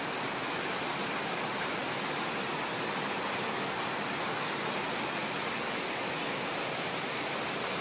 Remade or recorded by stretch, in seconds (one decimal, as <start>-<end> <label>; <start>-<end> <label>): 0.0-7.8 recorded

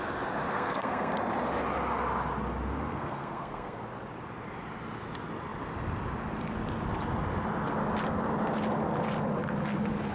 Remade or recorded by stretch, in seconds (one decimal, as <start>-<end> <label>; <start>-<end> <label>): 0.0-0.5 recorded; 0.5-1.1 remade; 1.1-2.9 recorded; 2.9-3.8 remade; 3.8-10.1 recorded

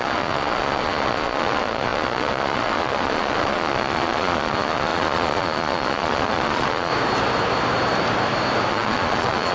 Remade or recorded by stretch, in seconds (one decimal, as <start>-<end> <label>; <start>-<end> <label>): 0.0-6.9 remade; 6.9-8.7 recorded; 8.7-9.5 remade

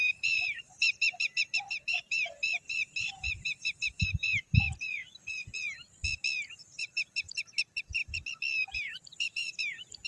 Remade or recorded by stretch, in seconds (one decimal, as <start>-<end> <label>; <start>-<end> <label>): 0.0-5.0 remade; 5.0-6.5 recorded; 6.5-8.0 remade; 8.0-8.6 recorded; 8.6-10.1 remade